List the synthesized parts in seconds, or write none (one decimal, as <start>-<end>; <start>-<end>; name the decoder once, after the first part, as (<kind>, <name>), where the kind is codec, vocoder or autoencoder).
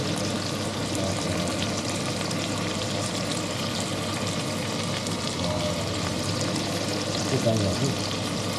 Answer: none